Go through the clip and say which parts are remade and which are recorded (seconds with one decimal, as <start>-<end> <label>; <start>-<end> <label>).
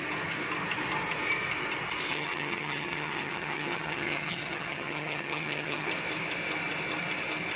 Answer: 0.0-2.1 recorded; 2.1-5.9 remade; 5.9-7.6 recorded